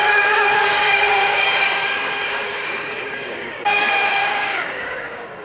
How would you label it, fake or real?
fake